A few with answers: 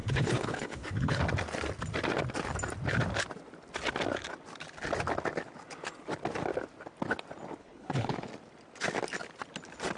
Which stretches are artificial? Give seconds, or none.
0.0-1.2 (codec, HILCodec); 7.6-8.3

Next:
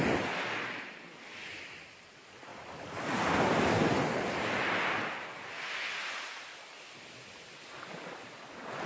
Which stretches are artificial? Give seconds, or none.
none

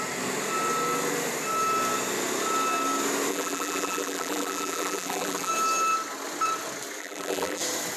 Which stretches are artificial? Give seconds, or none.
3.3-5.5 (vocoder, BigVGAN v2); 7.0-7.6

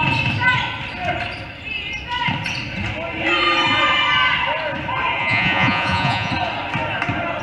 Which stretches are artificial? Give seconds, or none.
5.2-6.3 (vocoder, Vocos)

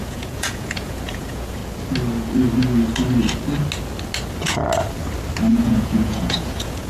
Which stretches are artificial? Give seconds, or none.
0.0-1.6 (vocoder, Vocos); 5.5-6.9

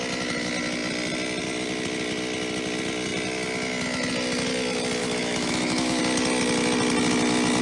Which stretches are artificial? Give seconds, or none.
5.0-6.0 (autoencoder, DAC-VAE)

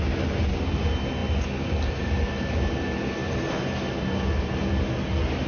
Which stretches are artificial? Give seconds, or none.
none

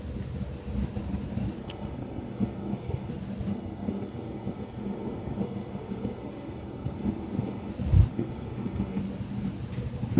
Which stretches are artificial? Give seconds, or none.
1.6-3.1 (codec, SNAC); 3.5-7.7; 8.1-9.0